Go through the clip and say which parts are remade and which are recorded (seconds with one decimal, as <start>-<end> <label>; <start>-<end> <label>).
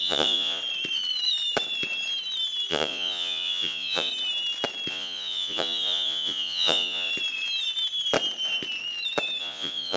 0.0-0.6 remade; 0.6-2.7 recorded; 2.7-4.1 remade; 4.1-4.9 recorded; 4.9-7.1 remade; 7.1-9.4 recorded; 9.4-10.0 remade